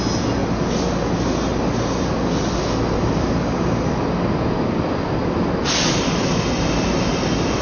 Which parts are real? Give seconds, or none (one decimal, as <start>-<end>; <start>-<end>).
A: 0.0-7.6